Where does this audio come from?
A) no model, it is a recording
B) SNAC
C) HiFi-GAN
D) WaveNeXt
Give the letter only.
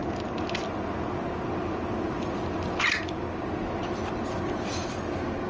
A